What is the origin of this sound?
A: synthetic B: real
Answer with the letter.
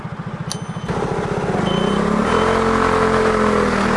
B